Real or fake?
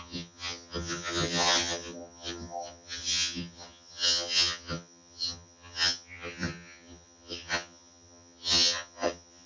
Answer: fake